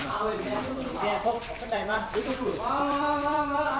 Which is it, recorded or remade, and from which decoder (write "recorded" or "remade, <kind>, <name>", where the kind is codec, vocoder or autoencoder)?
remade, vocoder, BigVGAN v2